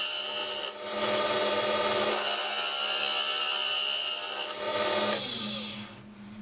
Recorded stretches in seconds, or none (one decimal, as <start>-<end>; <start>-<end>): 0.0-6.4